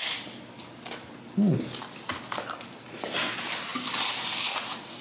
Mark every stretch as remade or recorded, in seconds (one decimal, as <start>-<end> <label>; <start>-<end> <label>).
0.0-5.0 recorded